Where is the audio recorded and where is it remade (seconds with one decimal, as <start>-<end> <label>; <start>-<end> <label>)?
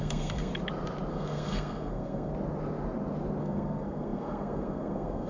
0.0-0.5 remade; 0.5-1.1 recorded; 1.1-2.3 remade; 2.3-3.4 recorded; 3.4-5.3 remade